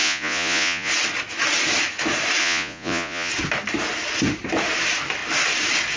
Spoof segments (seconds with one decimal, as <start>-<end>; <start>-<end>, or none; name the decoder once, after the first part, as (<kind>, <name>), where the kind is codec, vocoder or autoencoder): 0.0-0.9 (vocoder, Vocos); 2.4-3.3

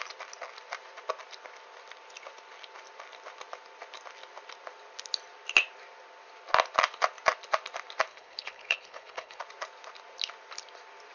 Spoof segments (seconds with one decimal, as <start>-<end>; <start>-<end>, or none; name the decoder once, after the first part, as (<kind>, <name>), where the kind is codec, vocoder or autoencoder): 8.1-9.4 (codec, HILCodec)

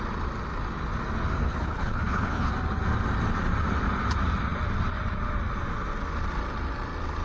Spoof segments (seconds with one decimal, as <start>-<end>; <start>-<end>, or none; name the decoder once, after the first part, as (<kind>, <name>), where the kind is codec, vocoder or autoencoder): 1.4-2.5 (codec, HILCodec)

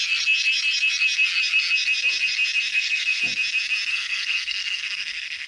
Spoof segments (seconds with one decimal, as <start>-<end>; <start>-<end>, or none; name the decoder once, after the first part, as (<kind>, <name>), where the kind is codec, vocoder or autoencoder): 2.7-3.2 (codec, SNAC); 3.9-5.5

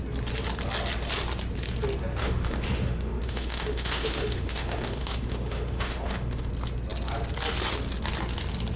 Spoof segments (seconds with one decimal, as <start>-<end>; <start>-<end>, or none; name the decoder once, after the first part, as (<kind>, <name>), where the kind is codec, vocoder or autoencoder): 2.2-6.5 (autoencoder, DAC-VAE)

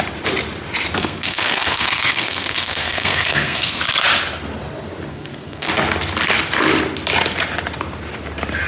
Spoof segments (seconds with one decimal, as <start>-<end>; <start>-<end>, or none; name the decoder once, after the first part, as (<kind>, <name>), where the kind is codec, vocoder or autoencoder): 1.0-3.8 (codec, SNAC); 5.1-5.7